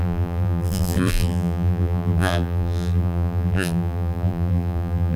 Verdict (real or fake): fake